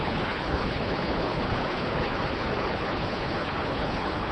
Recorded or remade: remade